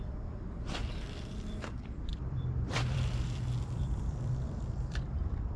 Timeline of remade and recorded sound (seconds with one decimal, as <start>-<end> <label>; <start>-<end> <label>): 0.0-5.6 remade